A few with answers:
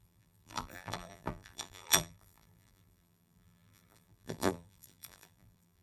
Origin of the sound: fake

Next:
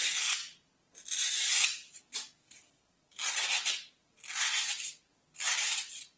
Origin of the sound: real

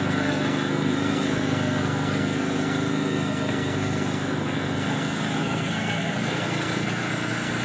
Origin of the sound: fake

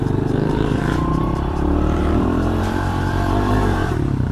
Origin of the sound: fake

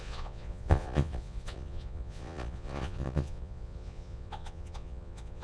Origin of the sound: fake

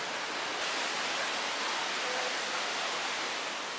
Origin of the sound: real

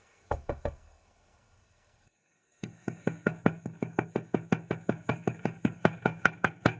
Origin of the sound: fake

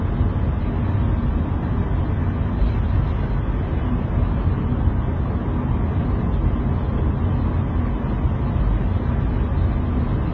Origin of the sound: real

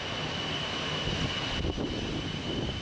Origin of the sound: real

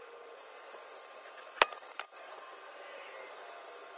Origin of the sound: real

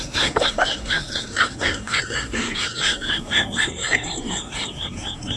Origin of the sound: fake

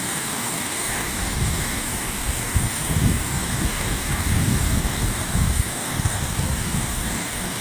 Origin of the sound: fake